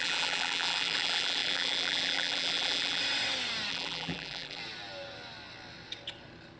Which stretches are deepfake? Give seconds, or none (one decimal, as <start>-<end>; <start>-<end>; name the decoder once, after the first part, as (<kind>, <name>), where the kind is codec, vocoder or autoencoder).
0.0-3.0 (vocoder, BigVGAN v2); 3.7-4.6